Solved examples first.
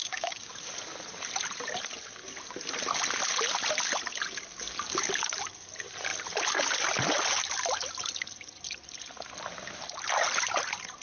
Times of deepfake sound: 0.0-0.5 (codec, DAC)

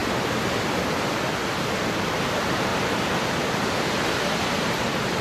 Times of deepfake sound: 1.8-2.7 (vocoder, BigVGAN v2); 3.3-5.2

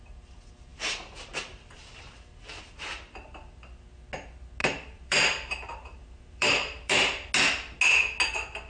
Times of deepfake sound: 4.6-7.3 (vocoder, BigVGAN v2)

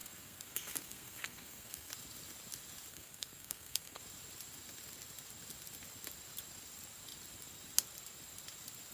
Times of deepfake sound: 0.0-1.9 (codec, SNAC); 2.9-4.0

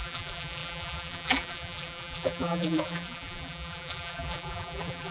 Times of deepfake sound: 0.0-5.1 (vocoder, BigVGAN v2)

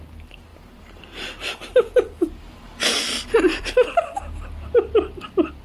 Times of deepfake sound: 0.5-3.6 (vocoder, BigVGAN v2)